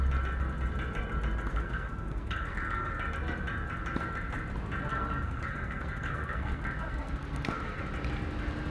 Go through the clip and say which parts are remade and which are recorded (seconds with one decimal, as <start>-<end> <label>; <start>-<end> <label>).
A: 0.0-1.5 recorded; 1.5-2.9 remade; 2.9-4.9 recorded; 4.9-7.8 remade; 7.8-8.7 recorded